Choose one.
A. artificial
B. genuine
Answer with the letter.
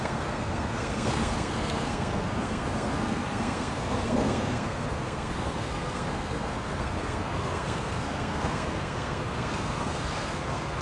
A